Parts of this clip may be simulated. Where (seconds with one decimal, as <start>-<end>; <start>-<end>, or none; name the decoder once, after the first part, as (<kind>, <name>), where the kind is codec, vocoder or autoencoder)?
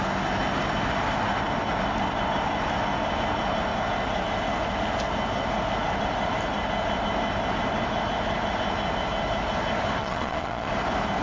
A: 10.0-10.7 (vocoder, Vocos)